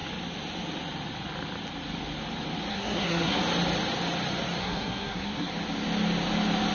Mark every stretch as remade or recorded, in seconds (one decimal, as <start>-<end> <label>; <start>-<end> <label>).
0.0-2.7 recorded; 2.7-3.4 remade; 3.4-4.6 recorded; 4.6-5.5 remade; 5.5-6.7 recorded